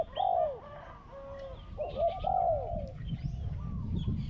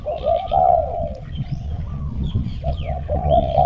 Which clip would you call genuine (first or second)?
first